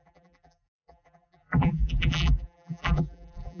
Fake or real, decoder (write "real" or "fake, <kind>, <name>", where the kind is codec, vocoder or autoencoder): fake, vocoder, BigVGAN v2